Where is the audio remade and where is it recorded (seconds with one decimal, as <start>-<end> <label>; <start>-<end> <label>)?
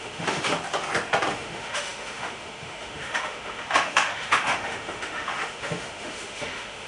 0.0-0.5 remade; 0.5-1.3 recorded; 1.3-6.9 remade